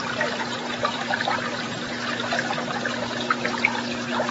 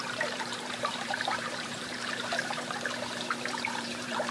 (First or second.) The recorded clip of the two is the first